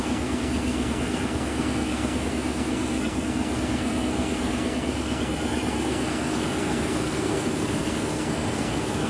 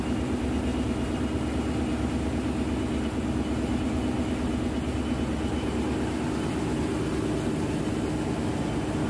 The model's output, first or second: first